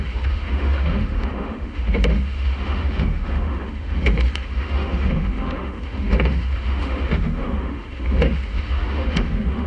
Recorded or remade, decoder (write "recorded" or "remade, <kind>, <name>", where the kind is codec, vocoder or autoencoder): remade, autoencoder, DAC-VAE